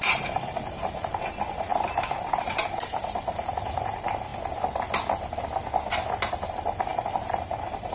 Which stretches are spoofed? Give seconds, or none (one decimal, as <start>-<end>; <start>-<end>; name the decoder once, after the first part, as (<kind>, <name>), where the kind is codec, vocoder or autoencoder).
0.0-1.7 (vocoder, BigVGAN v2); 2.2-4.3; 6.5-7.9